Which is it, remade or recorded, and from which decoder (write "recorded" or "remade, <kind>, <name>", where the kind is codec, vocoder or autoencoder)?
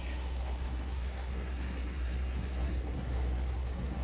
remade, codec, SNAC